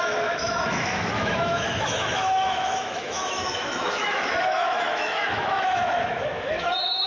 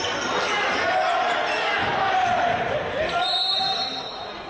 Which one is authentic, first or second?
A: second